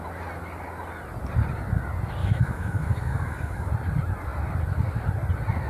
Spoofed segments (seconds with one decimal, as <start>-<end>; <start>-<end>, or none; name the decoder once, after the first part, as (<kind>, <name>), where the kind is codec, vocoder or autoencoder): 2.2-3.7 (autoencoder, DAC-VAE)